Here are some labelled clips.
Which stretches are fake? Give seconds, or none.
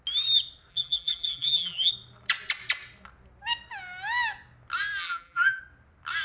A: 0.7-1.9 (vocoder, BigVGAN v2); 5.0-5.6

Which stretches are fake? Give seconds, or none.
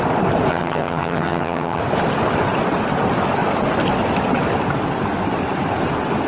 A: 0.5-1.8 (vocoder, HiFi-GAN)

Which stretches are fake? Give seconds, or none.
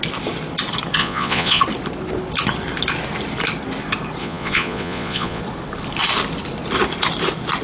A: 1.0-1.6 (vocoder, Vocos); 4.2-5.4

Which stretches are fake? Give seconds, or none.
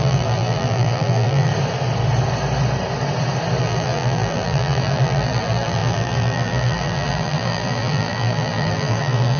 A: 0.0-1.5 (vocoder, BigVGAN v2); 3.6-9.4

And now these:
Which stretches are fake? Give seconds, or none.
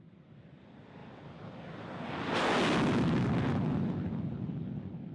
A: none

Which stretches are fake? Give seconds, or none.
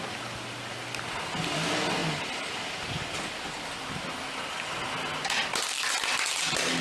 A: none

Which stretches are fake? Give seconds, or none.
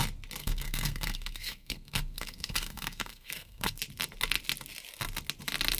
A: 0.4-3.8 (codec, SNAC)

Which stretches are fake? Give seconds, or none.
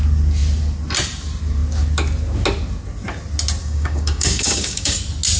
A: 3.6-5.0 (codec, DAC)